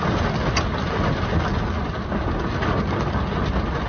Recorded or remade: recorded